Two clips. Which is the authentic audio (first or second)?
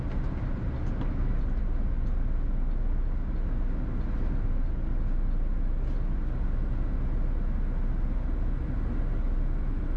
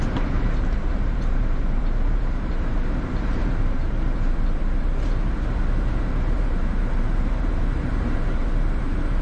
first